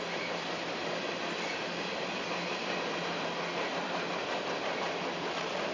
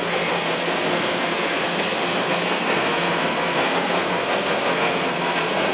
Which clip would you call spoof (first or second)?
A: second